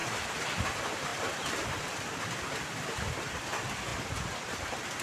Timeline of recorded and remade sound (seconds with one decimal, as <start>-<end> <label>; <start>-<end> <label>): 0.0-0.7 recorded; 0.7-5.0 remade